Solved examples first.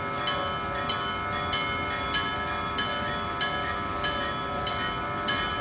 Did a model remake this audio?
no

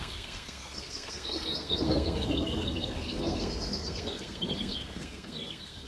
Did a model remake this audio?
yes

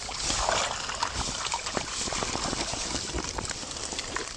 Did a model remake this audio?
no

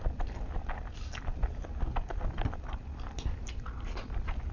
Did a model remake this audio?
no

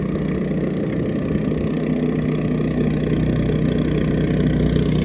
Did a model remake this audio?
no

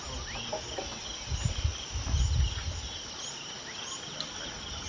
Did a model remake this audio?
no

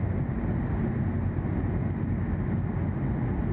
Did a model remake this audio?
no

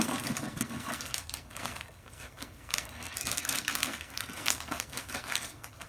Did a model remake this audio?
yes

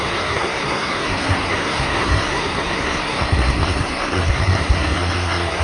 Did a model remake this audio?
yes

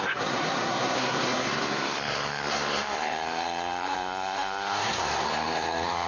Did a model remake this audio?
yes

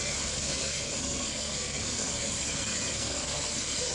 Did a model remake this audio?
yes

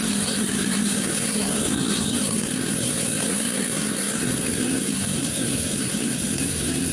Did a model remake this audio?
yes